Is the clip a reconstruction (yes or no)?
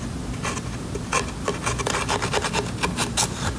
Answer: no